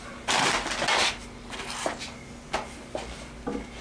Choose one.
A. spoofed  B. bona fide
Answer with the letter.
B